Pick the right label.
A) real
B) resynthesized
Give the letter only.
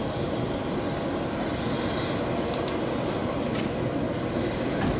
A